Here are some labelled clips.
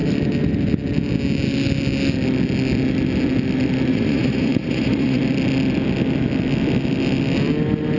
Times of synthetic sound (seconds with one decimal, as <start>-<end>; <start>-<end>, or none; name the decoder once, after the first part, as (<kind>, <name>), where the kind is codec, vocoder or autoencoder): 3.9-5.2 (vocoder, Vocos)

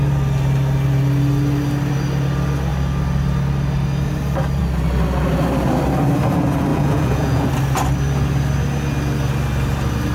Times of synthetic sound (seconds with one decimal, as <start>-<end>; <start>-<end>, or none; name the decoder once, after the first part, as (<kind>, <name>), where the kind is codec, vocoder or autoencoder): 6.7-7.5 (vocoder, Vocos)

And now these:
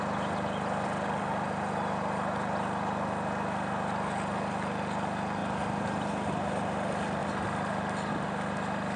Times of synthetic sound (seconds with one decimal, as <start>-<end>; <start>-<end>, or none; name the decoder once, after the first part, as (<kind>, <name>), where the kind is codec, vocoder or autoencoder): none